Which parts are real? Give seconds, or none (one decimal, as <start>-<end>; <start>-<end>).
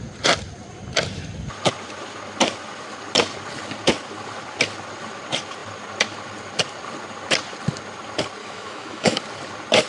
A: 0.0-8.4; 9.2-9.9